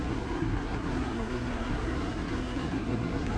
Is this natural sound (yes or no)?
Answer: no